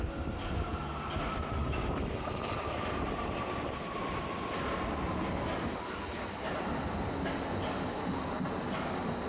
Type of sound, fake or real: real